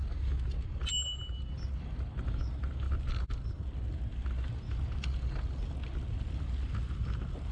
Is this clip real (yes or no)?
yes